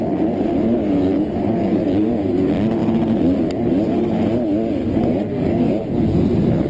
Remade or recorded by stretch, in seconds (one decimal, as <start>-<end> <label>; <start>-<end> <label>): 0.0-0.8 recorded; 0.8-2.1 remade; 2.1-4.8 recorded; 4.8-5.7 remade; 5.7-6.7 recorded